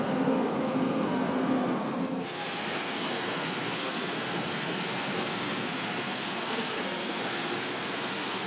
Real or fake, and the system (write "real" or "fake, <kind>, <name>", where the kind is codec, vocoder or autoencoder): fake, codec, SNAC